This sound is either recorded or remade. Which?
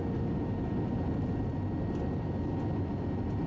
recorded